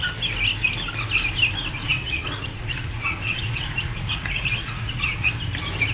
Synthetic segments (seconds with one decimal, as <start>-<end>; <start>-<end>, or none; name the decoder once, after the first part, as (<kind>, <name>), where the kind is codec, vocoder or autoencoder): 1.8-5.3 (vocoder, Vocos)